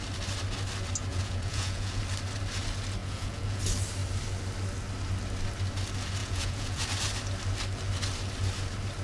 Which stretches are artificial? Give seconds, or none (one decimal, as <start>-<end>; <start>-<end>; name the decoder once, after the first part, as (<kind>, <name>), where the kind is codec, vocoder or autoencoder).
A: 1.1-2.0 (vocoder, Vocos); 3.0-3.6; 6.2-6.8